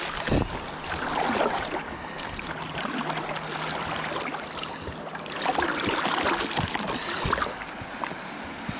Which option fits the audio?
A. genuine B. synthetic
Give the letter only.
A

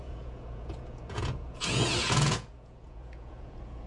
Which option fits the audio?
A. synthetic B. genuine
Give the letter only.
A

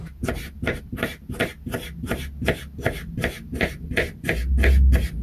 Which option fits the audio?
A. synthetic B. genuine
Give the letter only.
B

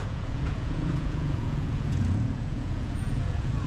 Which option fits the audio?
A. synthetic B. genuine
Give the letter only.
A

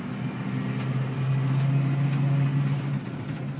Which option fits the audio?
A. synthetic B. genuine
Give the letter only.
B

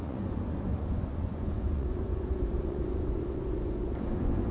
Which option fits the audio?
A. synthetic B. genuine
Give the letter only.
A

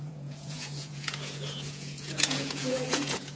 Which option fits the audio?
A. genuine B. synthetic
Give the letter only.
B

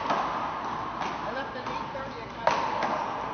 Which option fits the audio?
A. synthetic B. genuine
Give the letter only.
B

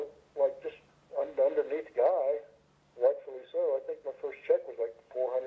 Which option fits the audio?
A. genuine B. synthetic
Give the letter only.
A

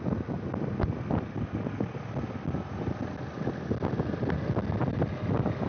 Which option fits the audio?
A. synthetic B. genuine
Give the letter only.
B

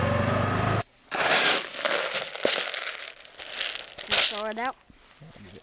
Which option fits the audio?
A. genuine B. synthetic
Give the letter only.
A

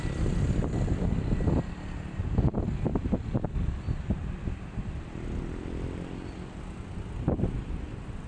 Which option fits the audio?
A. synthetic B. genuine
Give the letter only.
B